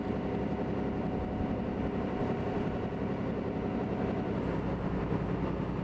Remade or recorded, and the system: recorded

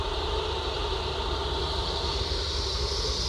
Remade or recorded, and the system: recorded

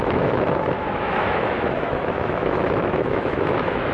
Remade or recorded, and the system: remade, autoencoder, DAC-VAE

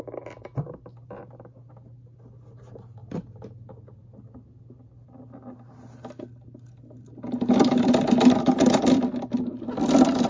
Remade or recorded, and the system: recorded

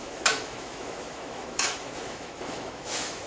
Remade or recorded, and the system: remade, autoencoder, DAC-VAE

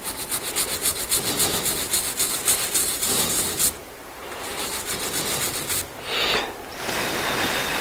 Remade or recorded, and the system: recorded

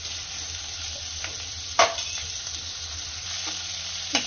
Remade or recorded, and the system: recorded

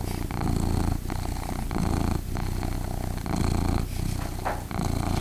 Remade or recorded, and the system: recorded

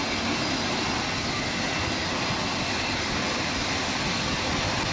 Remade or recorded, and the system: recorded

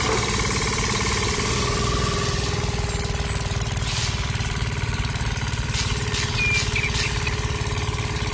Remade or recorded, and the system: recorded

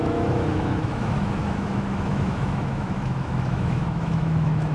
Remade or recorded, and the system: remade, autoencoder, DAC-VAE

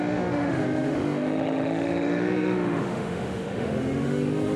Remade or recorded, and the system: remade, autoencoder, DAC-VAE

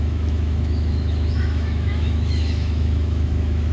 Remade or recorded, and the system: remade, autoencoder, DAC-VAE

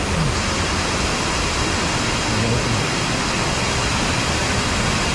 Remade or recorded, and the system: recorded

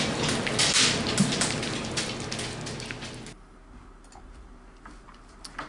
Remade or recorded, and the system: recorded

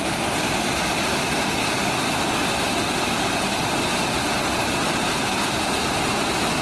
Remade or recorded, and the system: recorded